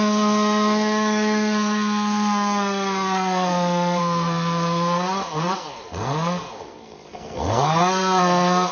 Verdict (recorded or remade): remade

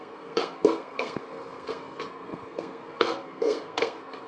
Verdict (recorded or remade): remade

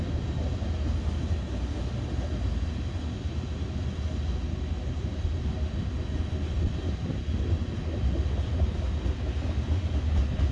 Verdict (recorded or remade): recorded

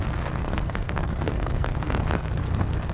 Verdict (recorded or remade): remade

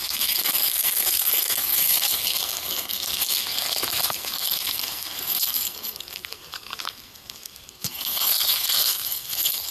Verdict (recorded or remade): remade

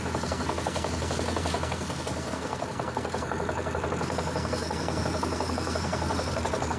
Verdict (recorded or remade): remade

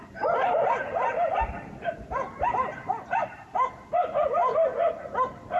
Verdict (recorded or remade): recorded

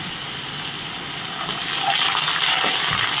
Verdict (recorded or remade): recorded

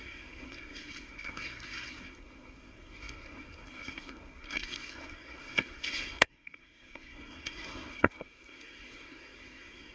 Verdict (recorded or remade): remade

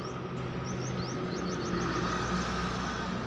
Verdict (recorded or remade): recorded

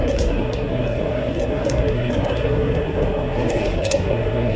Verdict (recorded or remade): remade